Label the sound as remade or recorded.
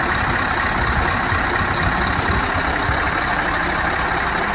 recorded